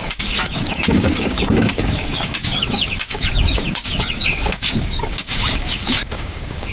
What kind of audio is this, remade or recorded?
remade